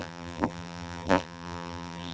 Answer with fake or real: fake